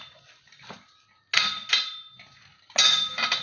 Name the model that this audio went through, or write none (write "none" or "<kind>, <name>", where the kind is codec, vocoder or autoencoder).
none